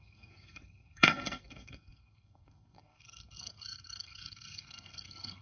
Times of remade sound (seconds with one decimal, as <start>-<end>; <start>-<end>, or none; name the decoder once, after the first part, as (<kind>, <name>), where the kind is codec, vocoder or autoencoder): 0.0-5.4 (codec, SNAC)